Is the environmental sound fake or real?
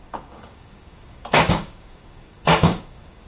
fake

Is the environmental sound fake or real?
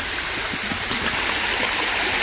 real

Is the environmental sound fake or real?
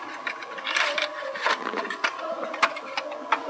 fake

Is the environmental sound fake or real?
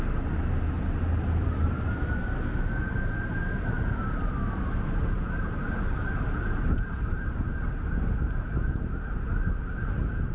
real